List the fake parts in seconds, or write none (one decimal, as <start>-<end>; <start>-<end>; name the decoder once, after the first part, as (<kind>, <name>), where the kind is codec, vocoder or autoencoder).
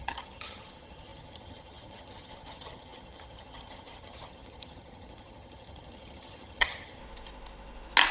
0.0-7.0 (vocoder, HiFi-GAN)